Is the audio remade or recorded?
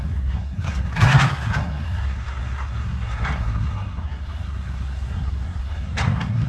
remade